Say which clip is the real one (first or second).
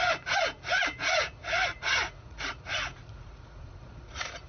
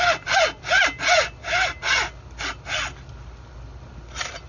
second